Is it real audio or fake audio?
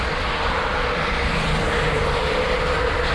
real